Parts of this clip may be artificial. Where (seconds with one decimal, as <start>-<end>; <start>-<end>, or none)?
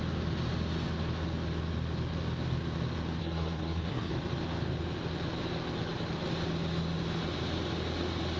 3.2-4.1